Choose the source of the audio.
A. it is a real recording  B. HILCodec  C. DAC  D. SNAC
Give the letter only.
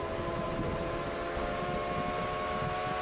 A